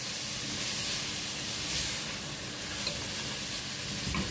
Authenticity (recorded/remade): recorded